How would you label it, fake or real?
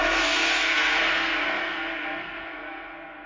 fake